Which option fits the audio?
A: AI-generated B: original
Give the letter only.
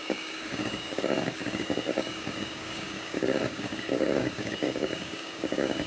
A